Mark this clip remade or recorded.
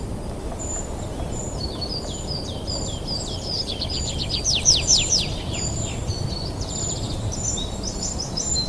remade